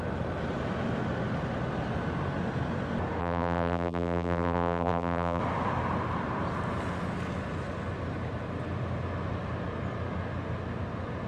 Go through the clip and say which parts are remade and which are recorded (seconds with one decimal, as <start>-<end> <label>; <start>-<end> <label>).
0.0-3.2 recorded; 3.2-5.4 remade; 5.4-11.3 recorded